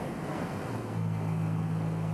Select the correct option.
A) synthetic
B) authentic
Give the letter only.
A